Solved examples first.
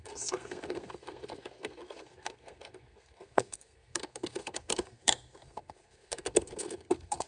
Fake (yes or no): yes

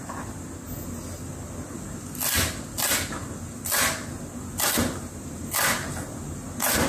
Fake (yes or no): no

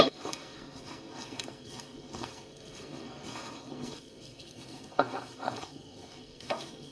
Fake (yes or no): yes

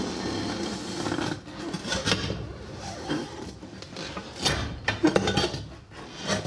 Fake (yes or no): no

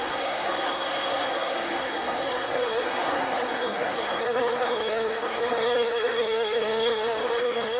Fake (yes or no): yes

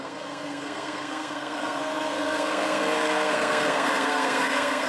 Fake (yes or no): yes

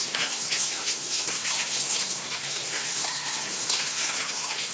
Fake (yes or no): yes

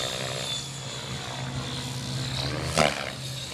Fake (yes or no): no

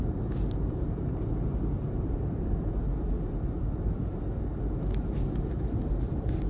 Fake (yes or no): no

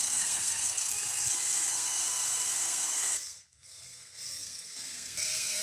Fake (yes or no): yes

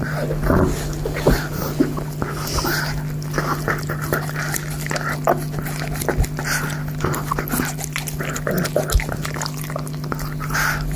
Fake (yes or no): no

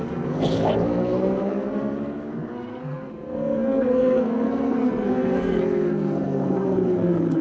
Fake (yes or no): yes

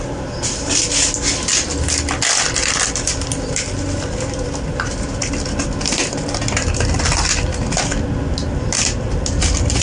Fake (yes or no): no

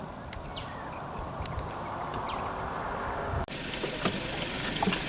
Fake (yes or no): no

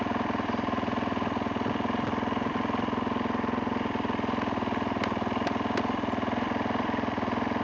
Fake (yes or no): no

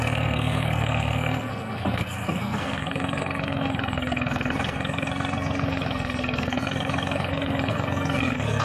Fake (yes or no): yes